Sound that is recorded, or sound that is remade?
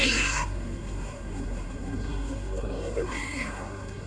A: remade